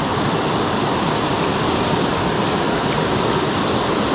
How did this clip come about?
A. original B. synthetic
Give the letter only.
A